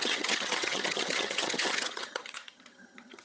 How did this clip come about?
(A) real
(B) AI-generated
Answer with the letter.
B